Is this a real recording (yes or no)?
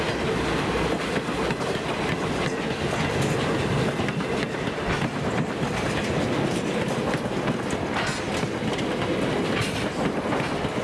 yes